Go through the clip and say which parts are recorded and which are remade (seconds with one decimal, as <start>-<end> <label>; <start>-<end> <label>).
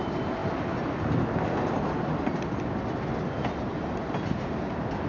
0.0-5.1 recorded